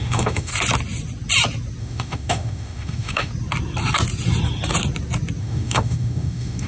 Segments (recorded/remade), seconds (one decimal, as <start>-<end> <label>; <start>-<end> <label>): 0.0-0.5 remade; 0.5-1.8 recorded; 1.8-3.3 remade; 3.3-5.4 recorded; 5.4-6.7 remade